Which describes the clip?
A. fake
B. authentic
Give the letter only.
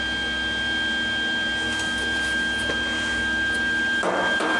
B